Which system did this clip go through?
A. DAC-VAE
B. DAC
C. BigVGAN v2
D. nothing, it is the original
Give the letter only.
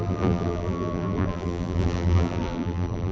C